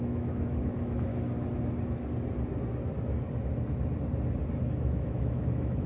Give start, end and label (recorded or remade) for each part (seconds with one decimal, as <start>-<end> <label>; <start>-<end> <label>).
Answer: 0.0-1.1 remade; 1.1-4.6 recorded; 4.6-5.9 remade

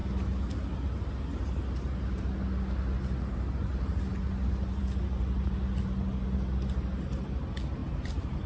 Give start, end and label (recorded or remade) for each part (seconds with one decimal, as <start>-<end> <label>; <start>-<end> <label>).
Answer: 0.0-7.8 recorded; 7.8-8.5 remade